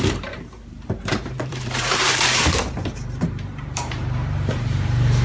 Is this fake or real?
fake